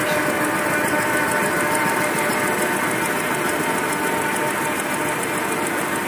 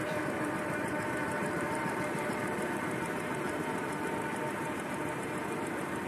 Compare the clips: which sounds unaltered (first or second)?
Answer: first